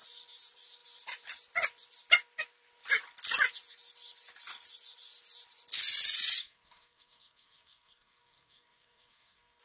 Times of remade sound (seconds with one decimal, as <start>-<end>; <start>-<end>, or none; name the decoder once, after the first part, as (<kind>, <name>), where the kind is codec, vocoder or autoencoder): 6.4-9.6 (codec, SNAC)